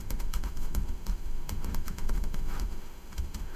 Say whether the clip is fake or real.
fake